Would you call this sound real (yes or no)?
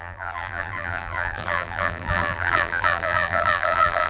no